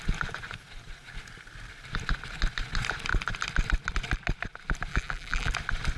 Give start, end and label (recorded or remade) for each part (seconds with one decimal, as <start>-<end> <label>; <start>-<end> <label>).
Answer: 0.0-4.9 recorded; 4.9-5.5 remade; 5.5-6.0 recorded